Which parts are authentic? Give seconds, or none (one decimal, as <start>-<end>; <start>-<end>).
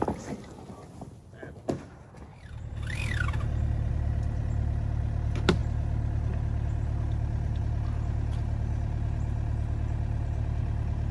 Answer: 0.0-2.3; 3.9-11.1